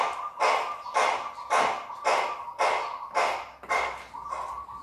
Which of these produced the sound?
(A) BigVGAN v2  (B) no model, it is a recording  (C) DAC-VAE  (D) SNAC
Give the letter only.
B